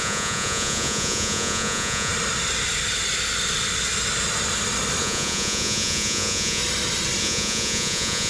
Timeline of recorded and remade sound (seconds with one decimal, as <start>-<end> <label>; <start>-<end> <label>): 0.0-2.1 remade; 2.1-5.0 recorded; 5.0-6.6 remade; 6.6-7.2 recorded; 7.2-8.3 remade